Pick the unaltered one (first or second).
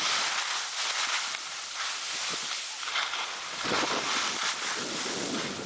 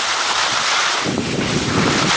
first